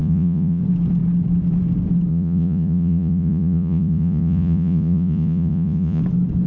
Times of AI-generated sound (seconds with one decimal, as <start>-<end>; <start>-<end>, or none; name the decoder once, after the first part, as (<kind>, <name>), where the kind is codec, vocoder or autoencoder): 0.0-0.6 (vocoder, Vocos); 2.1-6.0